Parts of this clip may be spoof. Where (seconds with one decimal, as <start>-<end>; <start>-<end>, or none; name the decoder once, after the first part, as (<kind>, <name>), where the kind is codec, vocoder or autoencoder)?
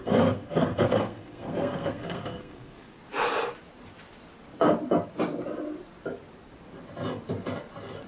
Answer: 0.0-3.0 (codec, SNAC)